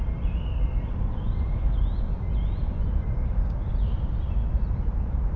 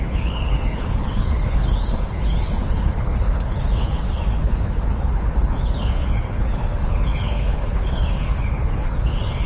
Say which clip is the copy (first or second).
second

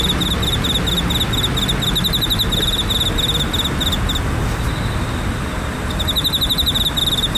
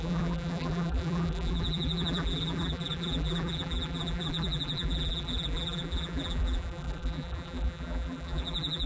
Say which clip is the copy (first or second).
second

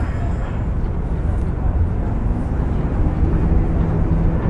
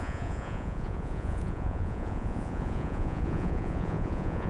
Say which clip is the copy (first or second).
second